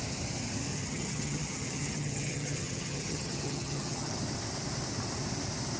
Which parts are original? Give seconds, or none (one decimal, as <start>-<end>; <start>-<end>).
0.0-0.7; 4.2-5.8